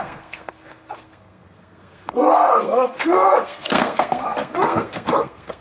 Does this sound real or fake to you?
fake